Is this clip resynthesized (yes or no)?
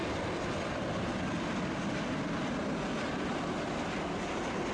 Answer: no